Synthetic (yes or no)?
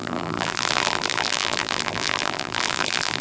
yes